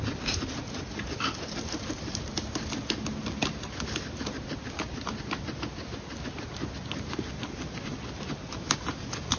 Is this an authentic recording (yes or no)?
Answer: yes